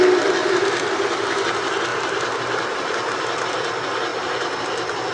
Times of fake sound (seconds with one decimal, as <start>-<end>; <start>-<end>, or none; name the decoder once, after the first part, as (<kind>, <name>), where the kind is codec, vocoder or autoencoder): 0.4-1.4 (vocoder, BigVGAN v2); 1.9-3.2; 4.1-5.1